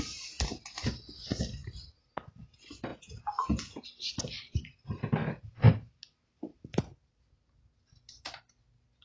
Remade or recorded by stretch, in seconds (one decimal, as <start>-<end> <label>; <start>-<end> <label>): 0.0-2.9 recorded; 2.9-3.8 remade; 3.8-9.0 recorded